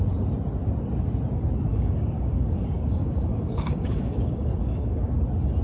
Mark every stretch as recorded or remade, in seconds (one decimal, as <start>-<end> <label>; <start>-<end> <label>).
0.0-1.7 recorded; 1.7-5.1 remade; 5.1-5.6 recorded